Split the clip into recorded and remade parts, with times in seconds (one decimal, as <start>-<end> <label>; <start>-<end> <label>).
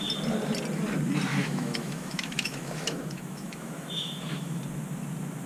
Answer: 0.0-1.3 recorded; 1.3-4.6 remade; 4.6-5.5 recorded